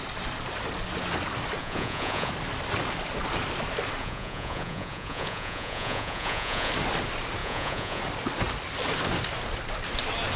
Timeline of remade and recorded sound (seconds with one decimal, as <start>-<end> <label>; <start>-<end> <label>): 0.0-1.6 recorded; 1.6-2.3 remade; 2.3-4.0 recorded; 4.0-6.7 remade; 6.7-7.4 recorded; 7.4-8.0 remade; 8.0-10.4 recorded